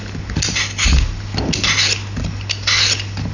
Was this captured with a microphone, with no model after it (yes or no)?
yes